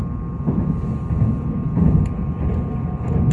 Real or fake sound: real